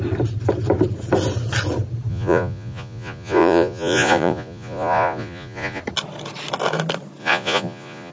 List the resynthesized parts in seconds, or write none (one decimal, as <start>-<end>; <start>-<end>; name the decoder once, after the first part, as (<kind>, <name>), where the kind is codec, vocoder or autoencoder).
2.1-5.8 (vocoder, Vocos); 7.2-8.1